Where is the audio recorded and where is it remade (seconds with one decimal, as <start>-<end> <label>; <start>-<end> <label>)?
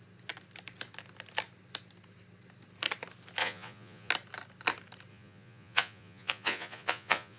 0.0-3.4 recorded; 3.4-4.1 remade; 4.1-5.1 recorded; 5.1-7.4 remade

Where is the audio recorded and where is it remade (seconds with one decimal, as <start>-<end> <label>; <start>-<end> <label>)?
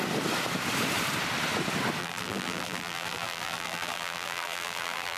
0.0-2.0 recorded; 2.0-5.2 remade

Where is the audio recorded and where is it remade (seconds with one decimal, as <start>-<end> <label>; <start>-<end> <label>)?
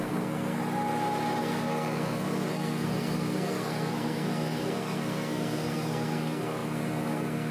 0.0-0.6 remade; 0.6-1.4 recorded; 1.4-7.5 remade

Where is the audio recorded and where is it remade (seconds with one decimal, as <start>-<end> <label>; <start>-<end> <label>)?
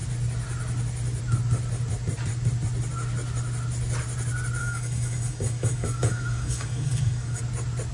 0.0-4.6 recorded; 4.6-7.4 remade; 7.4-7.9 recorded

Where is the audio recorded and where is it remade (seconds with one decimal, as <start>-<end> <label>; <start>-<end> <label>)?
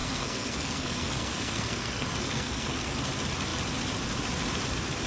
0.0-3.1 remade; 3.1-5.1 recorded